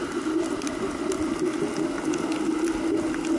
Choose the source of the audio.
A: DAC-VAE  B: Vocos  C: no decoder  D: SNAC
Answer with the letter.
C